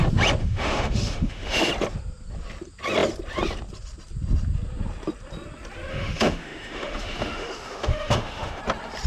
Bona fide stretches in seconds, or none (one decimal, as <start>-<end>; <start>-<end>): 0.0-0.4; 1.7-5.9; 8.6-9.1